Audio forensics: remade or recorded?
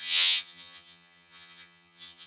remade